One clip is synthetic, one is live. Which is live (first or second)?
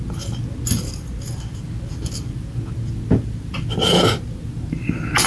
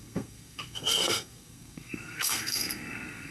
first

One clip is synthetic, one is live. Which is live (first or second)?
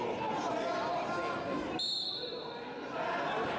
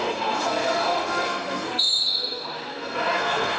first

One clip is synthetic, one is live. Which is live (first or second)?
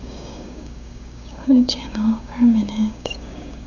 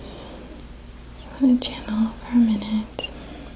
second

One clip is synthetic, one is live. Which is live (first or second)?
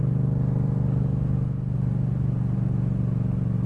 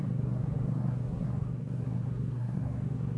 first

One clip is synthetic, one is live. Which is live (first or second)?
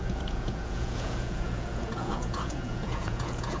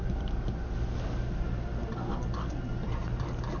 second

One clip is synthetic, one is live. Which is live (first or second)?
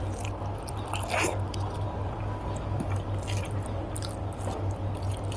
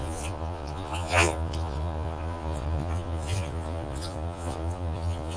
first